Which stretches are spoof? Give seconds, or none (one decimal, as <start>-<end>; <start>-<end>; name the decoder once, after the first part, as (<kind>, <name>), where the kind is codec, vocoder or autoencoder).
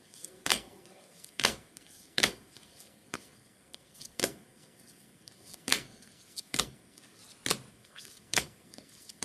0.0-7.2 (codec, SNAC); 7.7-9.2